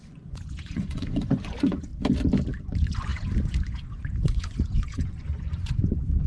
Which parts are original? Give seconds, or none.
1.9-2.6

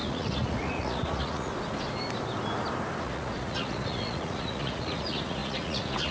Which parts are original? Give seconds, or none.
1.5-3.0